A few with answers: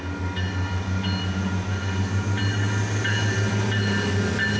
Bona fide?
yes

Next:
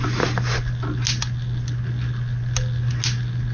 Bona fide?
yes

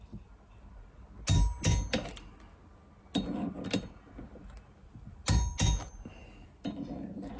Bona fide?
yes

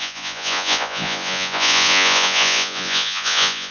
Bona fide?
no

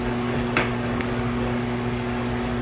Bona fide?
no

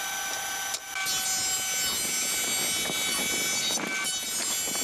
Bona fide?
yes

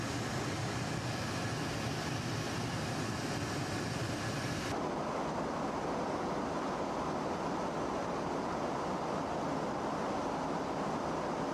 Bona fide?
yes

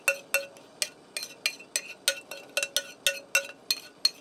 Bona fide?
yes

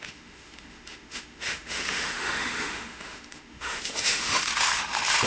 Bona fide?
no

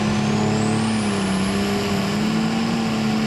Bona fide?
yes